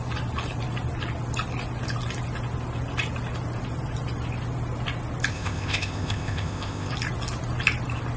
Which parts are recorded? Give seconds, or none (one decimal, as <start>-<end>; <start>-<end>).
0.0-5.3; 6.9-8.2